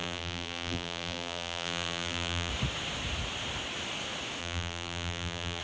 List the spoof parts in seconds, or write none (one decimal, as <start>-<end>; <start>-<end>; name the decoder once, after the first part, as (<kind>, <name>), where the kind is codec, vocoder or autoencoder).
0.0-2.5 (vocoder, BigVGAN v2); 4.4-5.6